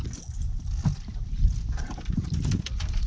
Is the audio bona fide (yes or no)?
yes